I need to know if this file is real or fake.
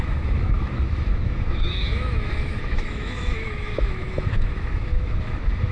fake